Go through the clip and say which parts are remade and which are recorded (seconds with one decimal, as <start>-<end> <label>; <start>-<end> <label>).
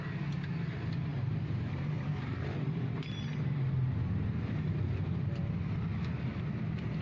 0.0-1.1 recorded; 1.1-4.8 remade; 4.8-7.0 recorded